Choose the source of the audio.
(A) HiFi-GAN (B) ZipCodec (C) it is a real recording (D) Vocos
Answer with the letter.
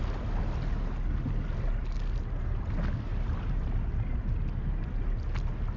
C